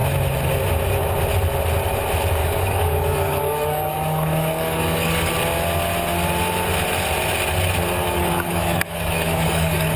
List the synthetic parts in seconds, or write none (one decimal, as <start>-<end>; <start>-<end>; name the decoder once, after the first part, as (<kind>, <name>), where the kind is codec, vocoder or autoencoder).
2.4-5.3 (codec, DAC); 8.0-10.0